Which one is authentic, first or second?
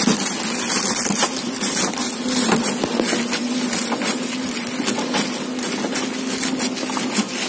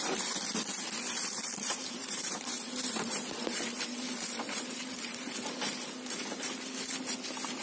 first